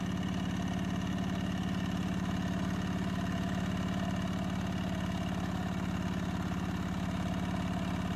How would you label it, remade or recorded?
recorded